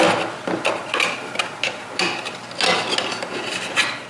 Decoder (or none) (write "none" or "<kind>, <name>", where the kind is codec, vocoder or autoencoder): none